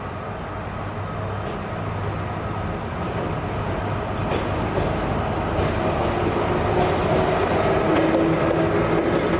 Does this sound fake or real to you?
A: real